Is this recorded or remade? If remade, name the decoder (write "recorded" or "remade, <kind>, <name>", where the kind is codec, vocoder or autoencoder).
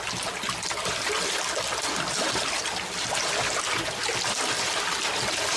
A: recorded